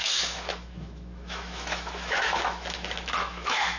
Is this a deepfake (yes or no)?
yes